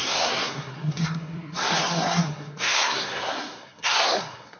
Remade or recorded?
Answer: remade